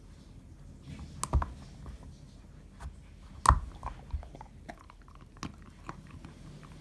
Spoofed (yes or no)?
no